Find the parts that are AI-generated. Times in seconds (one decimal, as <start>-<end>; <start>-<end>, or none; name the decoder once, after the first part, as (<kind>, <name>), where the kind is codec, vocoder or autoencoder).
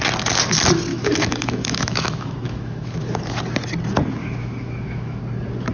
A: 0.9-3.0 (autoencoder, DAC-VAE); 4.2-5.2